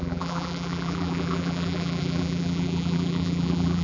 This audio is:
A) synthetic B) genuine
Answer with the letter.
A